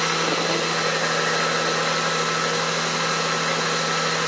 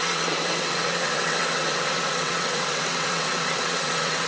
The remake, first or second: second